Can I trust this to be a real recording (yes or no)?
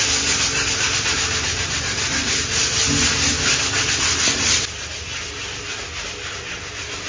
yes